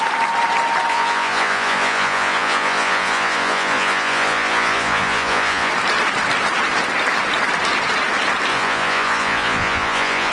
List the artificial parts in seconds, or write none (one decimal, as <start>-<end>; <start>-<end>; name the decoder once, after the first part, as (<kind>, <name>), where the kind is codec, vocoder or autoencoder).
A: 0.9-5.7 (vocoder, Vocos); 8.5-10.3